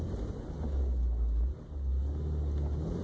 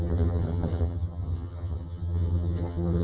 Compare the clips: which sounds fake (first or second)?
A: second